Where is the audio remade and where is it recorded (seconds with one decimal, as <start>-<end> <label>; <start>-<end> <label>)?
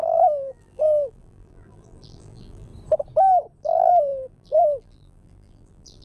0.0-2.7 remade; 2.7-3.6 recorded; 3.6-6.0 remade